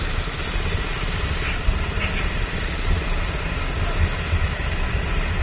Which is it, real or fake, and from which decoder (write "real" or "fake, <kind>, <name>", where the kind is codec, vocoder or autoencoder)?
real